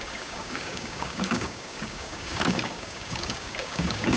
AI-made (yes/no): yes